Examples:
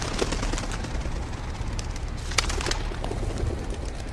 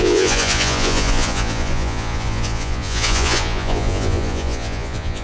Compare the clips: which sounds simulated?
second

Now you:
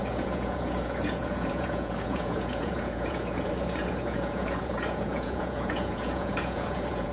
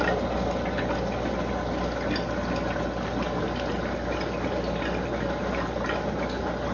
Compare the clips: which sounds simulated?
first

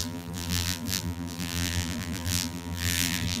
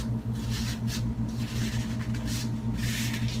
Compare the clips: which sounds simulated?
first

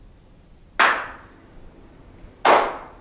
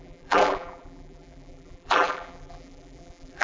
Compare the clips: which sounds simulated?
second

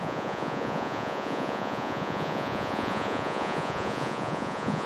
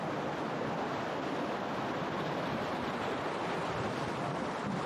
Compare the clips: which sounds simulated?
first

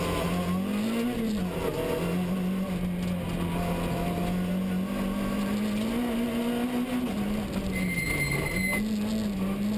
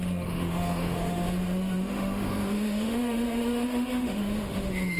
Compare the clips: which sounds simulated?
second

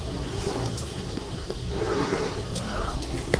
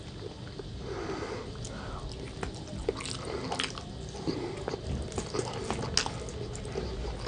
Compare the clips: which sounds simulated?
first